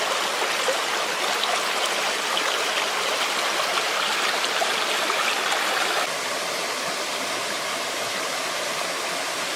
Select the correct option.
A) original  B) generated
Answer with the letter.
A